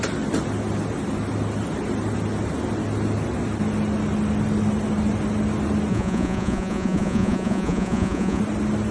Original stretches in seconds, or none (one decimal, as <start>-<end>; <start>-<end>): 0.0-5.9; 8.4-8.9